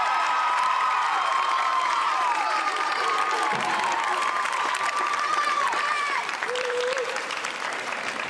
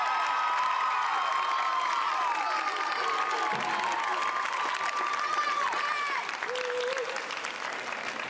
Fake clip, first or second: first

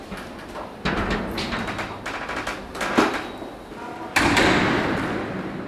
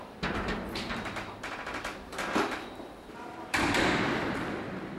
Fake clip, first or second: second